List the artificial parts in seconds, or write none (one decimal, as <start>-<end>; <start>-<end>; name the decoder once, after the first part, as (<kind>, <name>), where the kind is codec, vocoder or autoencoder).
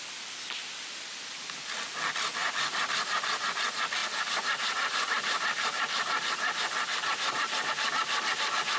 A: 2.4-3.4 (vocoder, BigVGAN v2); 4.0-7.7